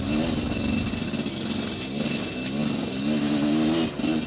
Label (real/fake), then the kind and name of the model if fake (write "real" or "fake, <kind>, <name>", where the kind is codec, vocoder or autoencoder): real